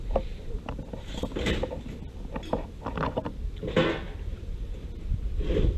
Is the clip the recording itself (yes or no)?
yes